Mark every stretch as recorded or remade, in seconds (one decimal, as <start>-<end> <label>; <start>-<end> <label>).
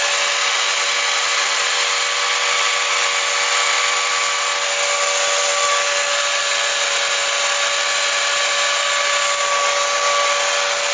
0.0-10.9 recorded